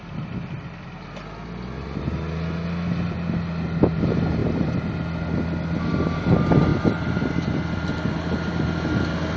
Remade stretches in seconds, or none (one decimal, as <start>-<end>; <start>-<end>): 4.4-5.0